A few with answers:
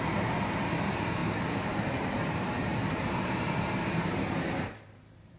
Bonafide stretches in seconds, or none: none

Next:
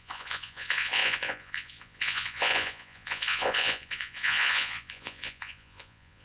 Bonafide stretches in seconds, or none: none

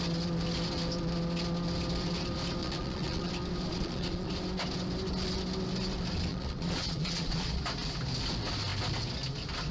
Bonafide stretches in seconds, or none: 0.0-2.6; 3.3-3.7; 4.3-6.3; 7.6-9.7

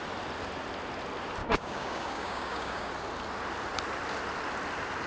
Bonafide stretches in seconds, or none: 0.0-1.4; 2.9-5.1

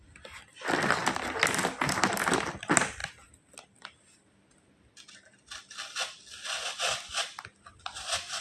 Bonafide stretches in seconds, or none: 0.0-8.4

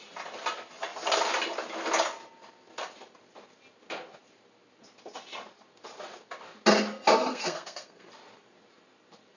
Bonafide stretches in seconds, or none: 0.0-7.3; 8.1-9.4